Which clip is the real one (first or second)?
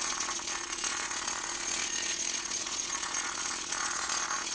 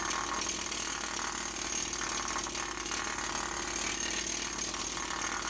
second